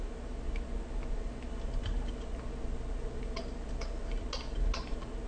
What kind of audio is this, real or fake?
real